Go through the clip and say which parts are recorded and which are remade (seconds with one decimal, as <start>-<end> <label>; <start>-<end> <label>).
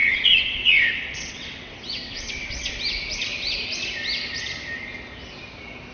0.0-2.7 remade; 2.7-5.9 recorded